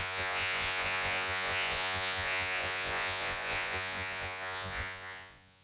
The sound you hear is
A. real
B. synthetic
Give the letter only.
B